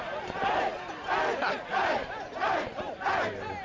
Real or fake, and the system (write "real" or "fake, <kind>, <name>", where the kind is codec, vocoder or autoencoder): real